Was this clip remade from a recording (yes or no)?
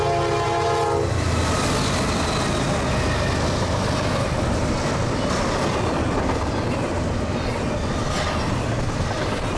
no